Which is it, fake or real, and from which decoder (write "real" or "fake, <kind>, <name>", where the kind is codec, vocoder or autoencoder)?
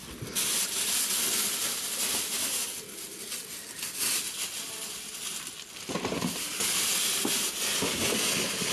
real